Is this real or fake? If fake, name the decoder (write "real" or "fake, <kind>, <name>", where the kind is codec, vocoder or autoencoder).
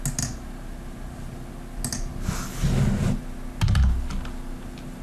real